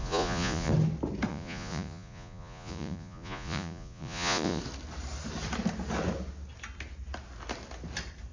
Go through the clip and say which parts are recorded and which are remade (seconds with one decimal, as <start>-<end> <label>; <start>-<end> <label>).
0.0-0.7 remade; 0.7-1.3 recorded; 1.3-4.6 remade; 4.6-8.3 recorded